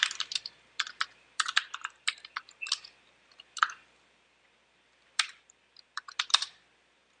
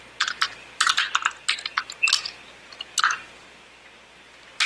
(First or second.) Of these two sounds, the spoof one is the first